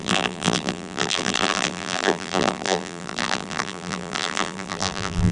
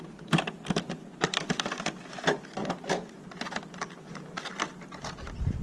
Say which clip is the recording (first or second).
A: second